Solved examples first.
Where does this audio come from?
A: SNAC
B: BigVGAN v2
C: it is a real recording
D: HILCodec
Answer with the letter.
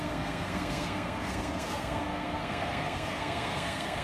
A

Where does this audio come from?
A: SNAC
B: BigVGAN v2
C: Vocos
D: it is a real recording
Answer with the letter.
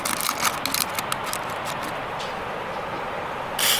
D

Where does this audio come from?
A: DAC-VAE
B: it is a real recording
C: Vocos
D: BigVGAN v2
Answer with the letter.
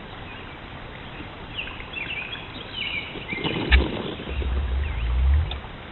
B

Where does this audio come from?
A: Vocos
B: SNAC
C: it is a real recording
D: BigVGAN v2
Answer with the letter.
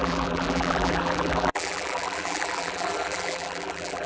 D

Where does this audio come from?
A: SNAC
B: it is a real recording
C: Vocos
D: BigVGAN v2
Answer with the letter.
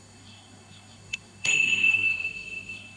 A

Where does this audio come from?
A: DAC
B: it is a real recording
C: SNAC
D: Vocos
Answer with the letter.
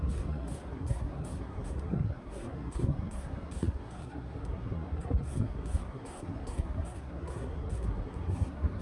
C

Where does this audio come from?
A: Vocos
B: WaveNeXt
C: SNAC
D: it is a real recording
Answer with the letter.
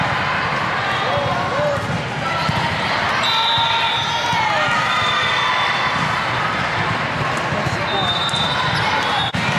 D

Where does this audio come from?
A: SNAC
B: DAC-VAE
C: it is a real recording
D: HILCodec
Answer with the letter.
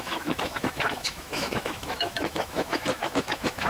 B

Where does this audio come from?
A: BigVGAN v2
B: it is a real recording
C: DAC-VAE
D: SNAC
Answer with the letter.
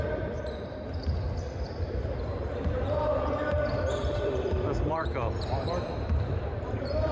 A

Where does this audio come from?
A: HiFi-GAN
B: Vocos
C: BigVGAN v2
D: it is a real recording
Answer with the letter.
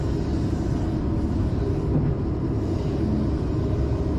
D